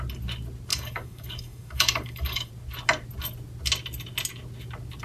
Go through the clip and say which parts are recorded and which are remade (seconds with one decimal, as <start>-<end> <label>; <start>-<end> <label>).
0.0-0.7 recorded; 0.7-2.5 remade; 2.5-5.0 recorded